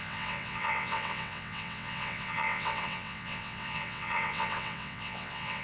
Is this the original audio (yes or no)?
no